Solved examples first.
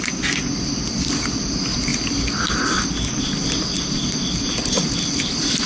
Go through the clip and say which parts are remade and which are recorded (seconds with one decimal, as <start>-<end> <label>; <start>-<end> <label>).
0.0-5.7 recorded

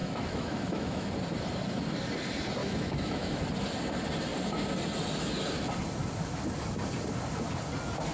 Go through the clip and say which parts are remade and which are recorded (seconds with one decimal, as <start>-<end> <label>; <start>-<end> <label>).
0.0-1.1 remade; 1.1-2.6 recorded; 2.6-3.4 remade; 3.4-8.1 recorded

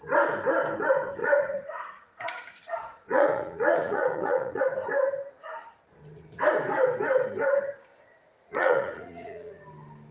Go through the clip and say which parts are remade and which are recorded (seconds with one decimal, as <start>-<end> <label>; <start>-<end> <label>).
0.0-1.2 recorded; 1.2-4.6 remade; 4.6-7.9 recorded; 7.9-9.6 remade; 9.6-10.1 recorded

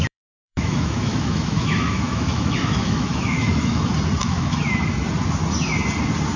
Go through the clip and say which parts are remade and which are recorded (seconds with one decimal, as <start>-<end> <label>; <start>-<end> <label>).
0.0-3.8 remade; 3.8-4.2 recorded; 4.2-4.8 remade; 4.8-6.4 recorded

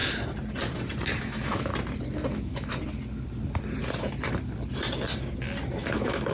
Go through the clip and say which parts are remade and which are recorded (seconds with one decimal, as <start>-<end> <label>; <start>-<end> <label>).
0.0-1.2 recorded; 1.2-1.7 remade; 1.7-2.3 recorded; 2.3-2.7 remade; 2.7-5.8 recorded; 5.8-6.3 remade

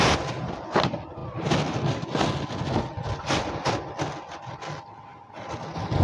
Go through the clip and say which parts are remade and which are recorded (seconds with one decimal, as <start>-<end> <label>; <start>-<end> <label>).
0.0-6.0 recorded

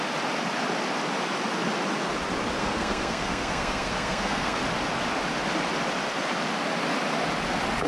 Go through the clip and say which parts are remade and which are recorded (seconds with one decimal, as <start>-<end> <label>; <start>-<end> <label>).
0.0-2.6 recorded; 2.6-4.6 remade; 4.6-7.9 recorded

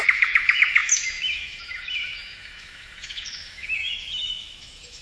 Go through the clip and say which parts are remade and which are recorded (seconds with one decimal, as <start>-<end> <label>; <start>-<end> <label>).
0.0-5.0 remade